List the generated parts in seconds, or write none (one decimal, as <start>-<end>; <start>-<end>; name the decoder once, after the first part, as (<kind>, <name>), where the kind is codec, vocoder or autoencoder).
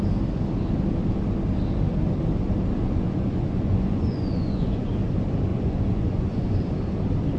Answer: 2.8-4.9 (vocoder, Vocos); 5.5-6.7